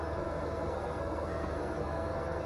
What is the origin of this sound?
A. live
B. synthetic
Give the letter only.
B